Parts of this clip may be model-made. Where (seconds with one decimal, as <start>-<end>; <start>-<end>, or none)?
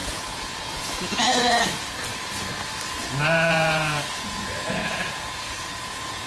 0.0-1.6; 3.0-6.3